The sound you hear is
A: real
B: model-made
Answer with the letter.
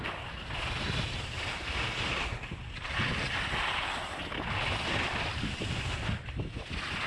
A